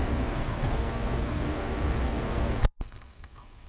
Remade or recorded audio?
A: remade